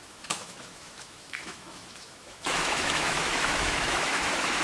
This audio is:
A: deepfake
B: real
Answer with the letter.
A